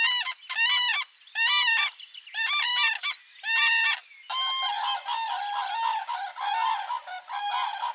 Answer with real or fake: real